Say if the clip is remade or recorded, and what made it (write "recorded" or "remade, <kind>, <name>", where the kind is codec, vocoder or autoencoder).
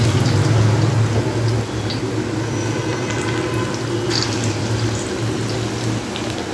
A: recorded